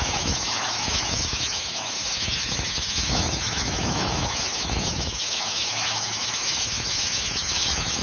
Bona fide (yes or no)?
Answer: no